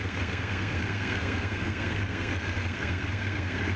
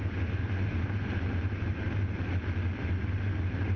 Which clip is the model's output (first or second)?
first